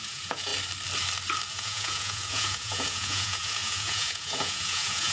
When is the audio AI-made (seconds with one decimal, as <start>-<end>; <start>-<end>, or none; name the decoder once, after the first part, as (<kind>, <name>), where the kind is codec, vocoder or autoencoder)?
0.0-0.5 (vocoder, Vocos); 1.5-5.1